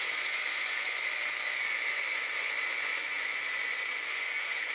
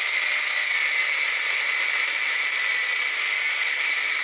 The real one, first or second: second